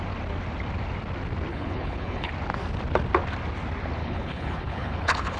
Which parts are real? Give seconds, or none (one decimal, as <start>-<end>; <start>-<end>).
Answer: 0.0-1.5; 2.3-4.0